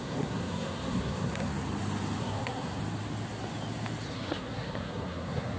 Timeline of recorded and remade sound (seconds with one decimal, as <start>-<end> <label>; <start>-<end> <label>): 0.0-1.5 remade; 1.5-2.2 recorded; 2.2-2.8 remade; 2.8-4.1 recorded; 4.1-5.6 remade